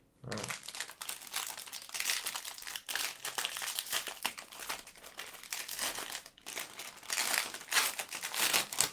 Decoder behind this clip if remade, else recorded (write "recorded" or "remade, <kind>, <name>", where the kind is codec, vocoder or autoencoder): recorded